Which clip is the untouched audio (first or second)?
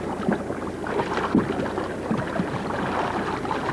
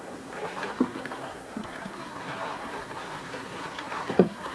first